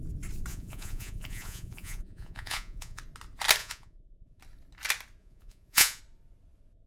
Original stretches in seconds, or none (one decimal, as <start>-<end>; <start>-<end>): 0.0-0.5; 3.0-3.6; 4.4-5.2; 6.0-6.9

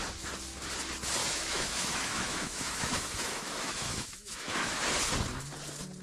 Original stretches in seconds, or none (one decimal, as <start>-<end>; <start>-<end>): 0.0-1.2; 4.8-6.0

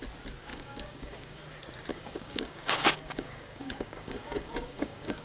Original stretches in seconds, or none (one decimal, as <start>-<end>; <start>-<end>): 0.0-0.5; 1.4-1.9

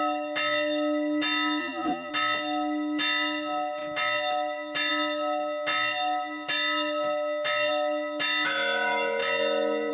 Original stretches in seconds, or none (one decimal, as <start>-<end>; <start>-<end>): 0.0-1.6; 2.1-9.9

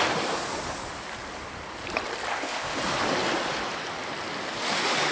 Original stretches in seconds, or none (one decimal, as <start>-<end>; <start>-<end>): 0.0-2.3; 2.8-5.1

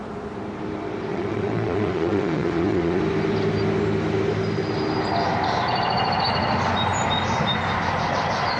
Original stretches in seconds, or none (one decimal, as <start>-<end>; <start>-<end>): 0.0-1.1; 3.0-8.6